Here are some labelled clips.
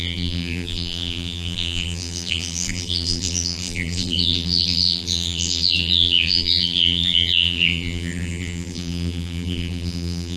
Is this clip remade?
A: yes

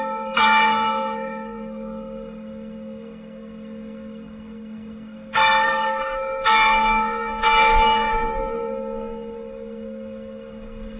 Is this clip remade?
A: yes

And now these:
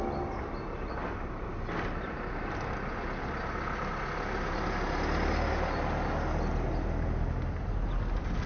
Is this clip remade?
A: no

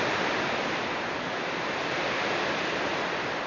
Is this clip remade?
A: no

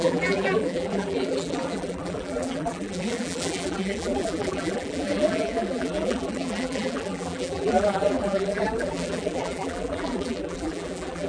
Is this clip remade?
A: yes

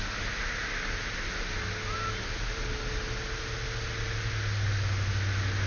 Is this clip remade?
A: no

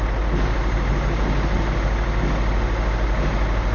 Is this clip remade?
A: no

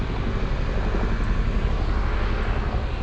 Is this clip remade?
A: no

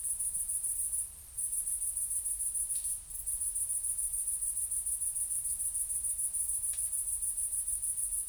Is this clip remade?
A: no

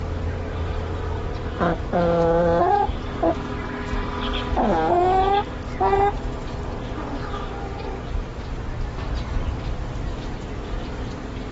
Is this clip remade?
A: no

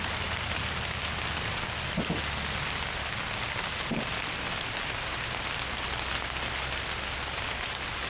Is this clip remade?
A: no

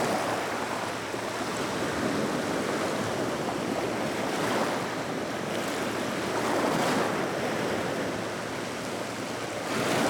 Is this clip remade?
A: no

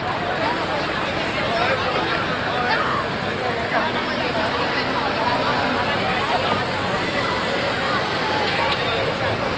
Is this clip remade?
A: no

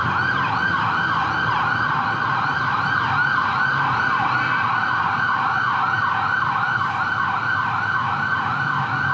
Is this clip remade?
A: no